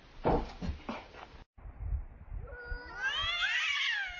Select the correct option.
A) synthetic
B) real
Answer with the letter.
B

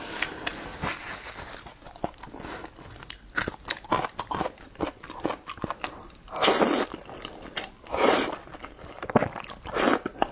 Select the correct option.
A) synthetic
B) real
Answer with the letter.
B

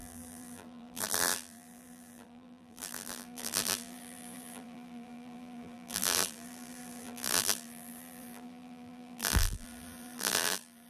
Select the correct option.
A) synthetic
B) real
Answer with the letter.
A